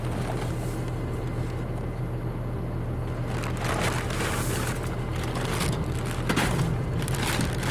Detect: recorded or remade recorded